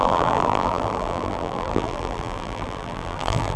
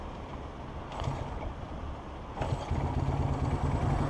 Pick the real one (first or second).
second